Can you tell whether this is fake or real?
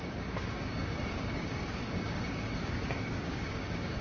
fake